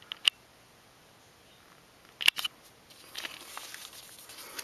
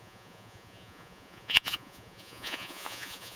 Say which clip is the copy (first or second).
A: second